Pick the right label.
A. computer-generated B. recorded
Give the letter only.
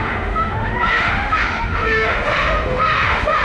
A